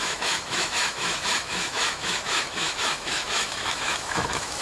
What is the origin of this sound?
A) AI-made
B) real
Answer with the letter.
A